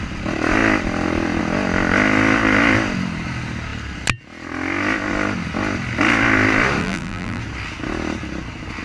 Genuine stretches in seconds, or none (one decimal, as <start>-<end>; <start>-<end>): 0.0-6.8; 7.4-8.8

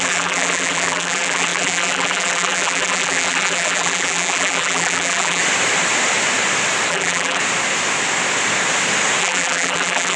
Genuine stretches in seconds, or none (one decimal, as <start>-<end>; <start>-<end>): 5.4-6.9; 7.4-9.2

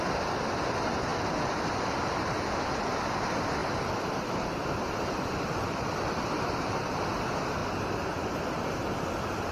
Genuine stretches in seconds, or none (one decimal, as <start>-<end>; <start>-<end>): 0.0-3.6; 6.9-7.6; 8.4-9.5

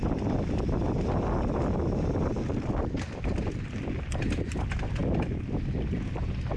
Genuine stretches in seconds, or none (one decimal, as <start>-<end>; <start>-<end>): 0.0-6.6

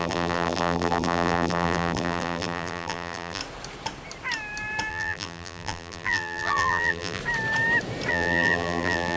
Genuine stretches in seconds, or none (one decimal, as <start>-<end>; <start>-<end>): 3.4-4.9; 7.2-8.1

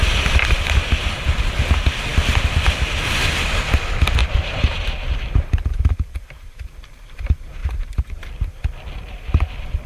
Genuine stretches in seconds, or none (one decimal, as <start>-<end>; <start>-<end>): 0.0-4.2; 6.8-7.6; 8.5-9.9

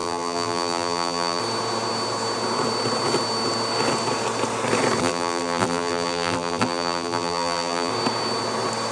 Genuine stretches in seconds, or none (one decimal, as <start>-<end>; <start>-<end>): 1.4-5.0; 7.9-8.9